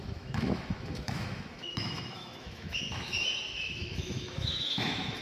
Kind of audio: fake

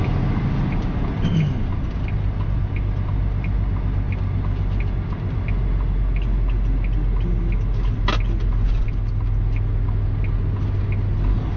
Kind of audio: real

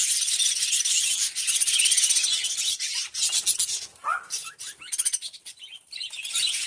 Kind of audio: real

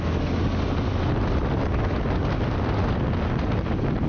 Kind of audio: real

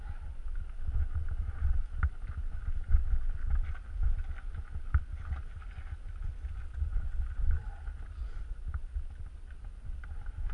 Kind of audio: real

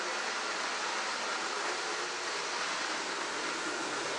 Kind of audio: real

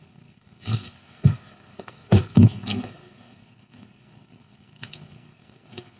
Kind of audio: fake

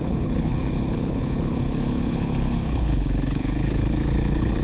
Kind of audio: fake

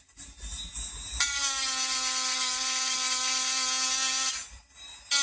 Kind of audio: real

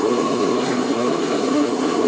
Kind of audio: fake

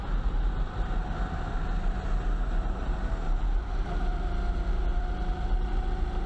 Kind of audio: real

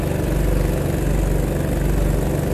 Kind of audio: real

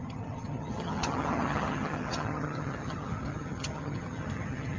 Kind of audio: fake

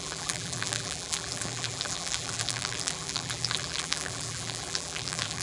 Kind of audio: fake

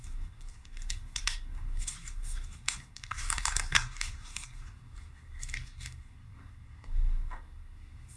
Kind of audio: fake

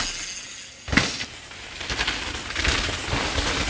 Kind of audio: real